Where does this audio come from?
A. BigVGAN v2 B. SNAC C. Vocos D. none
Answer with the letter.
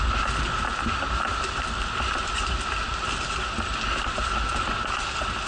D